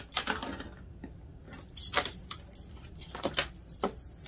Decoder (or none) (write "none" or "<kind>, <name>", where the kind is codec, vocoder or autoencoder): none